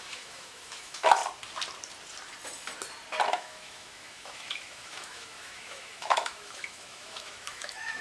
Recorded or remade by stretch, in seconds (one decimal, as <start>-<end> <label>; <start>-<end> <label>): 0.0-1.2 remade; 1.2-3.3 recorded; 3.3-8.0 remade